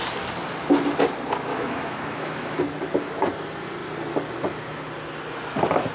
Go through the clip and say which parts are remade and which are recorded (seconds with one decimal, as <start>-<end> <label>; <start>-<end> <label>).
0.0-1.5 recorded; 1.5-2.6 remade; 2.6-5.9 recorded